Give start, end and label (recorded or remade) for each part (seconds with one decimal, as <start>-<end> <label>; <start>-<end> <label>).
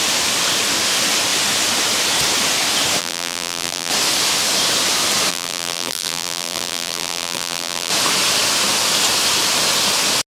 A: 0.0-3.0 recorded; 3.0-3.9 remade; 3.9-5.3 recorded; 5.3-7.9 remade; 7.9-10.3 recorded